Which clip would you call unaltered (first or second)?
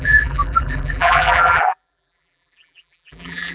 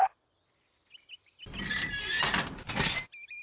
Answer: second